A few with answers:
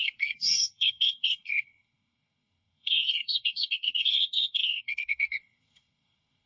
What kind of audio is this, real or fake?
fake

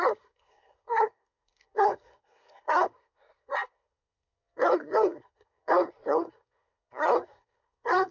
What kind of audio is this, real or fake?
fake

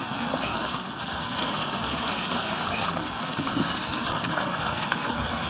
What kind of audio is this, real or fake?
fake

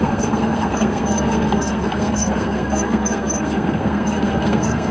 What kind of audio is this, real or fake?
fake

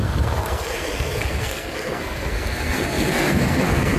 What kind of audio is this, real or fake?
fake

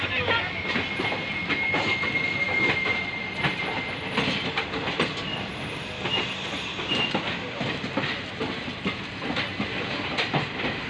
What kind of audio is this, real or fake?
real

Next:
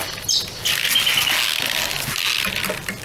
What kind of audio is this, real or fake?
real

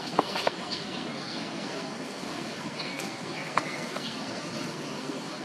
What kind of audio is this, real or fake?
fake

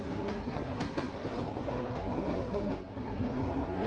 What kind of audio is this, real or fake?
fake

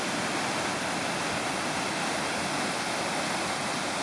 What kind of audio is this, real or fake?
real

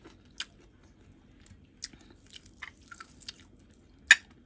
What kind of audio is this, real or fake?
real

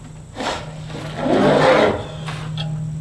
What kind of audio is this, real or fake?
real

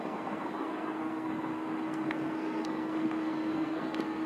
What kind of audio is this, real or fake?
fake